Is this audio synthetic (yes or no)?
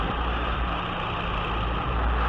no